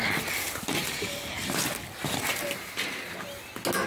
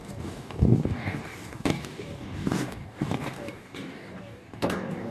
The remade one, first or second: second